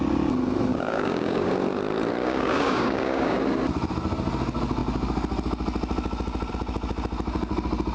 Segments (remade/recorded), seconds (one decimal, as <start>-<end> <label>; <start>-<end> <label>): 0.0-0.7 recorded; 0.7-1.5 remade; 1.5-2.2 recorded; 2.2-3.4 remade; 3.4-7.9 recorded